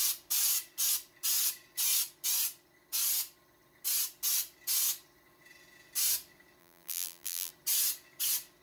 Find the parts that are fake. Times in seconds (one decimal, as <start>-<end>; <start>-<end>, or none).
6.6-7.5